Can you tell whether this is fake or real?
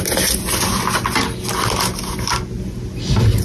real